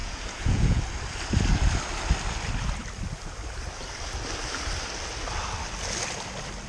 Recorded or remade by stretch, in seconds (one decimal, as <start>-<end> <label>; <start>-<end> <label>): 0.0-0.8 remade; 0.8-6.7 recorded